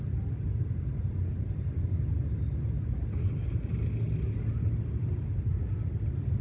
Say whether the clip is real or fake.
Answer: real